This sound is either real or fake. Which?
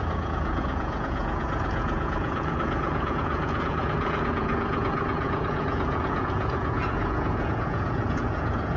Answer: fake